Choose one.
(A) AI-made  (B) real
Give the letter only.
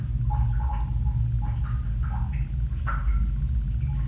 B